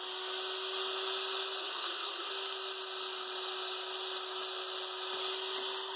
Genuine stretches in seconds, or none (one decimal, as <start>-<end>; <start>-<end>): 0.0-1.6; 2.3-6.0